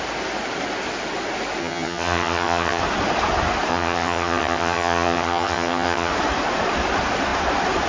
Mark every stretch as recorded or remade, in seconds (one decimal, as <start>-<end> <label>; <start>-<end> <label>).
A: 0.0-1.6 recorded; 1.6-2.8 remade; 2.8-3.7 recorded; 3.7-6.1 remade; 6.1-7.9 recorded